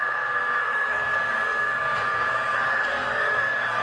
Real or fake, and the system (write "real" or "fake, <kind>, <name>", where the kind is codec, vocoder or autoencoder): fake, codec, SNAC